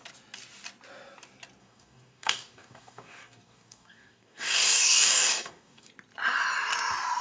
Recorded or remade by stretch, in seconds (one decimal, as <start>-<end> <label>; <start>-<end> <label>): 0.0-1.6 recorded; 1.6-5.9 remade; 5.9-7.2 recorded